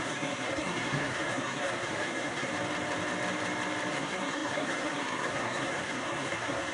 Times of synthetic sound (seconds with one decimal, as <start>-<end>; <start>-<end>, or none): 0.0-2.5; 3.9-6.7